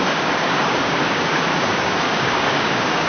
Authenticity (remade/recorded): remade